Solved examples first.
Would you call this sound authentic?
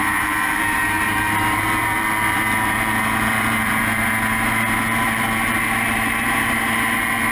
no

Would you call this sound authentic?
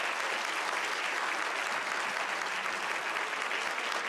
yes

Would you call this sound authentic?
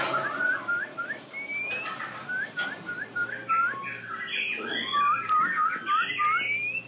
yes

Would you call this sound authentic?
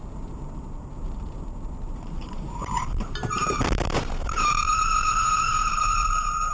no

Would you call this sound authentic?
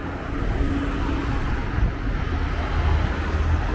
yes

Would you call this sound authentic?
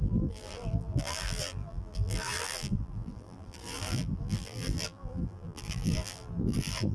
no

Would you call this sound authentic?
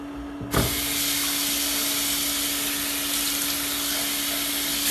yes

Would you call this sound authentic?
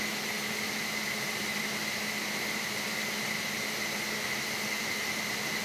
yes